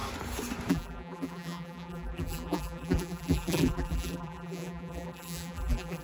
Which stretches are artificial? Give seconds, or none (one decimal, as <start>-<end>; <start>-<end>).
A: 0.7-6.0